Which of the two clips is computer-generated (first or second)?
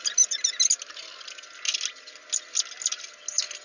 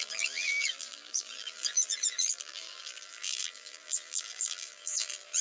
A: second